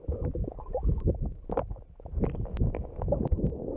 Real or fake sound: real